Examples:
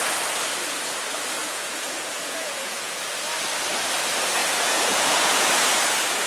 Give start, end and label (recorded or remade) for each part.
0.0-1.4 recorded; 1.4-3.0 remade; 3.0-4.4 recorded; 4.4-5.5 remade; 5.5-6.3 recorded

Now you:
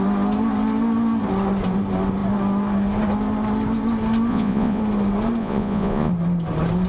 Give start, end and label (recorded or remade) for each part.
0.0-4.3 recorded; 4.3-4.8 remade; 4.8-5.4 recorded; 5.4-6.1 remade; 6.1-6.9 recorded